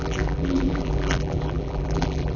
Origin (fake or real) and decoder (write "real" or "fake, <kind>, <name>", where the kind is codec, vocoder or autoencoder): fake, vocoder, BigVGAN v2